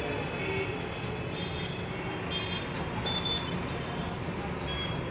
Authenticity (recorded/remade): recorded